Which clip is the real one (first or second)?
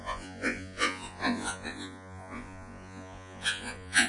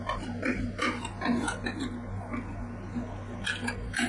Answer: second